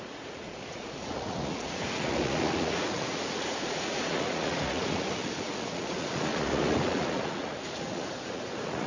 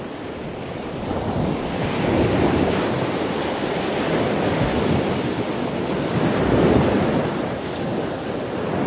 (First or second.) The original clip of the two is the second